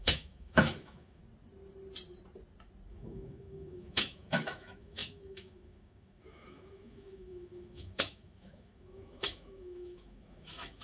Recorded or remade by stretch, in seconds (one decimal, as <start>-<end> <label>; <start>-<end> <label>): 0.0-1.2 remade; 1.2-2.9 recorded; 2.9-10.8 remade